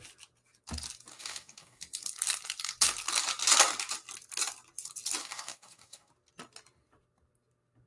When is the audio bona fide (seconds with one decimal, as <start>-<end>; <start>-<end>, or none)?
0.0-1.1; 1.8-5.2; 6.1-7.9